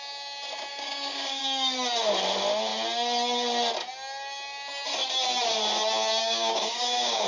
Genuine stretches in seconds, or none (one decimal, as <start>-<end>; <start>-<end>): 0.0-0.7; 1.4-6.2

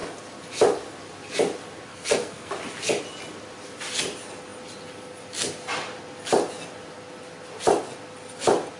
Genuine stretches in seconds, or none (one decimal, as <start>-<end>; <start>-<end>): 0.0-1.9; 2.5-8.8

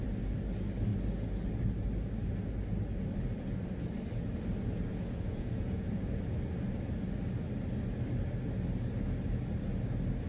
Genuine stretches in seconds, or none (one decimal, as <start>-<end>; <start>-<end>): 0.0-4.9; 6.0-10.3